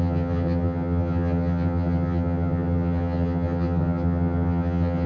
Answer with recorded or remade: remade